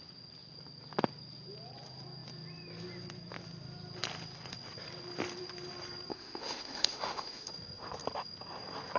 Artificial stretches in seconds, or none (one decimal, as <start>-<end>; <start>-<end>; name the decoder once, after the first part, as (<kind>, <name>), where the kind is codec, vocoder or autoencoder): 6.1-7.5 (autoencoder, DAC-VAE)